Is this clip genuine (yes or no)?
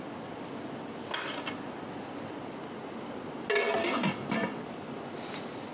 yes